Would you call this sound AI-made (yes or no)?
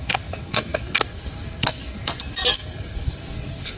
yes